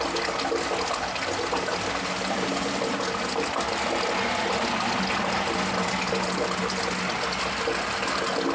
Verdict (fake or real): real